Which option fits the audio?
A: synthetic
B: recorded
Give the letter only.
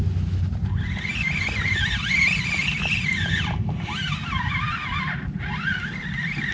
B